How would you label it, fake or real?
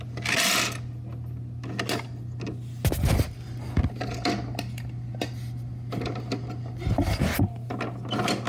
real